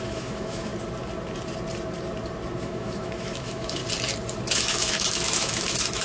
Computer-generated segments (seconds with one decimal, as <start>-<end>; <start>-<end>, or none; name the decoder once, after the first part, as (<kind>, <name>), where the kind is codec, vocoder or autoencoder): 0.0-0.7 (autoencoder, DAC-VAE); 2.6-3.8; 4.5-6.0